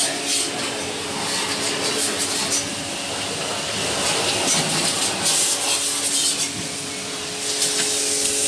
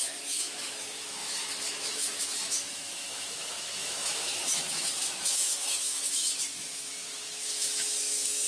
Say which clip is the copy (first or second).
second